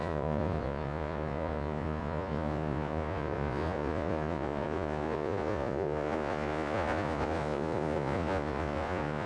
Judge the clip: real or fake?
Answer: fake